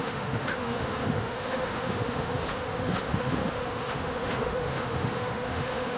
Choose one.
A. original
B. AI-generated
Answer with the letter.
B